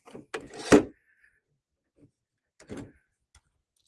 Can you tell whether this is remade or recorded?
recorded